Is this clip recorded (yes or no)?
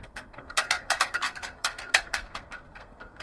no